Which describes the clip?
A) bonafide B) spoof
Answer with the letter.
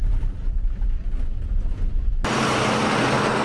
A